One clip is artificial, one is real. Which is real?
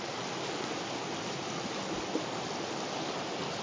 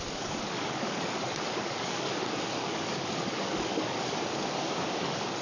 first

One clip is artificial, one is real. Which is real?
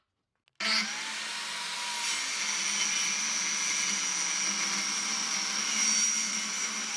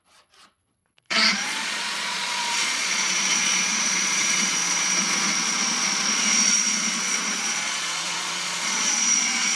first